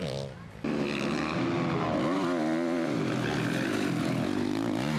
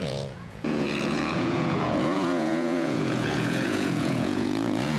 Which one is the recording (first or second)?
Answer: first